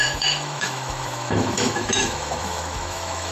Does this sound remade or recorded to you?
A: remade